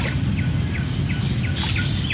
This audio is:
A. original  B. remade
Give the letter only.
A